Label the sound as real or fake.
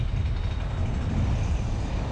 real